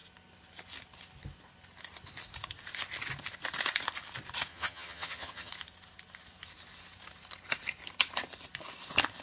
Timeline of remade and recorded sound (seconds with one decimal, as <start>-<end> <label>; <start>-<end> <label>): 0.0-4.5 recorded; 4.5-5.5 remade; 5.5-9.2 recorded